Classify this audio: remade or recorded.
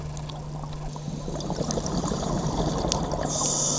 recorded